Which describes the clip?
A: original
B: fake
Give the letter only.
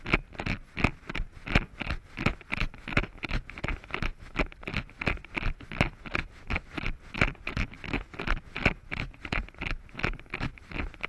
A